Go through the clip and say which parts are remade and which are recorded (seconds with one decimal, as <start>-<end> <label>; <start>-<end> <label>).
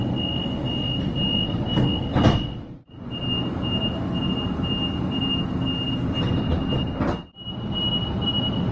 0.0-8.7 recorded